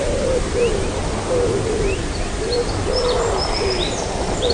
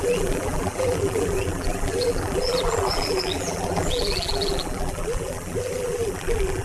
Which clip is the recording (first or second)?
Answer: first